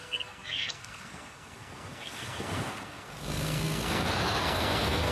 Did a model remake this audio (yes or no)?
yes